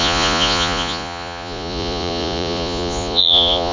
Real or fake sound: fake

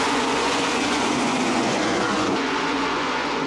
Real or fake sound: fake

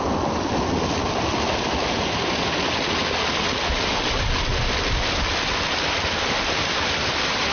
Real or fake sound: real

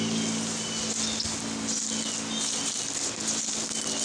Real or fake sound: real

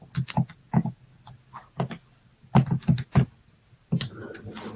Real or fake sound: real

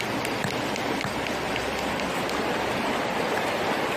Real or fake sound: real